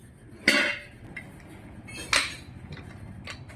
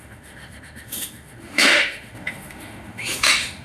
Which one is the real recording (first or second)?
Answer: first